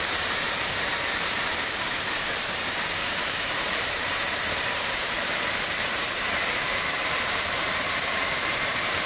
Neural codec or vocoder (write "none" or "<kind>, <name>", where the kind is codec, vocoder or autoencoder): vocoder, BigVGAN v2